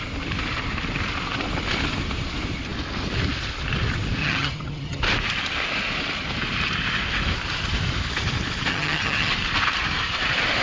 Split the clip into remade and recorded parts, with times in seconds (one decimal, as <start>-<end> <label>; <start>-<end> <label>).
0.0-4.2 recorded; 4.2-5.0 remade; 5.0-8.7 recorded; 8.7-9.3 remade; 9.3-10.6 recorded